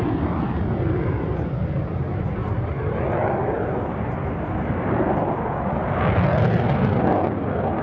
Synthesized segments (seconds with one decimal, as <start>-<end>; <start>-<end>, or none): none